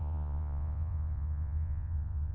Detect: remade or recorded remade